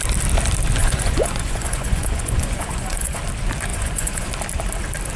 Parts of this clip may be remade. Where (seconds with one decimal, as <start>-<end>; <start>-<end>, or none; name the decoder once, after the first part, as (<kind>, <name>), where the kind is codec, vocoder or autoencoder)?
0.8-3.2 (vocoder, Vocos); 3.7-4.3